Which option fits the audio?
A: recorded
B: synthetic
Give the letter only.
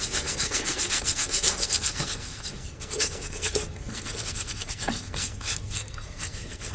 B